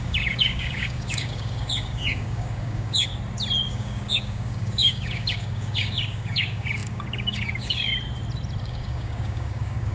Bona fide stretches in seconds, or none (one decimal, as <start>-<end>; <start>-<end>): 3.1-3.7; 7.9-8.6